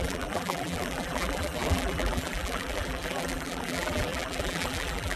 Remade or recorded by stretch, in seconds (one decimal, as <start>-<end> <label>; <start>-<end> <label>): 0.0-5.2 remade